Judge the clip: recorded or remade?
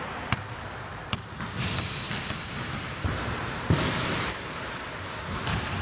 recorded